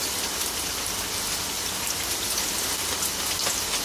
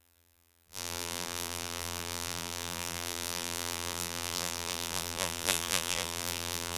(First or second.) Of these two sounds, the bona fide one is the first